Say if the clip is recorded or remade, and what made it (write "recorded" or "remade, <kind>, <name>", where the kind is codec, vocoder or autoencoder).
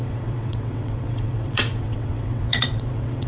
remade, vocoder, WaveNeXt